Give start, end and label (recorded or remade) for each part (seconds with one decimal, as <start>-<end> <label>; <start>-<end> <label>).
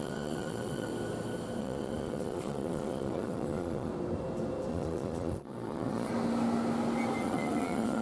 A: 0.0-0.9 remade; 0.9-1.6 recorded; 1.6-3.9 remade; 3.9-4.7 recorded; 4.7-6.1 remade; 6.1-7.2 recorded; 7.2-8.0 remade